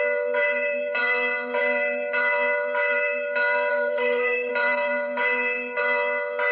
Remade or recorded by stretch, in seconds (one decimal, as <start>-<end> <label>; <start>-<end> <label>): 0.0-3.7 recorded; 3.7-4.5 remade; 4.5-6.5 recorded